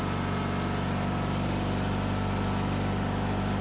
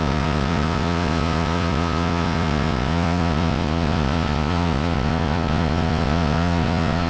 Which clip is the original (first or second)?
first